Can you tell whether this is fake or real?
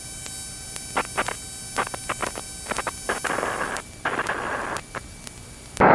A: real